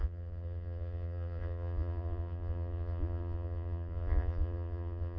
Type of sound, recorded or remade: remade